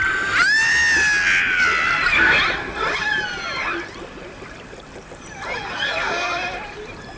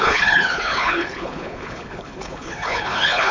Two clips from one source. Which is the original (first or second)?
first